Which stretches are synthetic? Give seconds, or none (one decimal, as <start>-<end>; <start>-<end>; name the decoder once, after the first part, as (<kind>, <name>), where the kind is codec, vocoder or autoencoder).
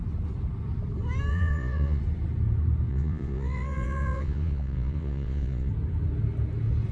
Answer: 1.3-2.0 (vocoder, Vocos); 2.9-5.7